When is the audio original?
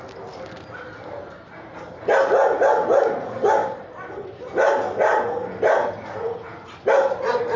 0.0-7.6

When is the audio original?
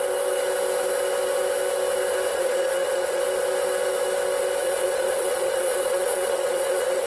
0.0-2.3; 3.2-4.6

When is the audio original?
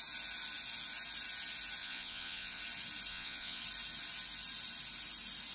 0.0-1.8; 2.6-3.1; 3.6-5.5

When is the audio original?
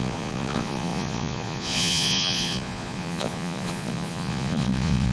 none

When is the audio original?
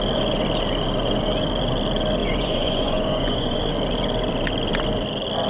0.0-2.2; 3.6-5.5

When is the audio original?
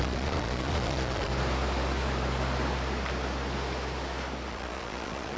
1.3-4.5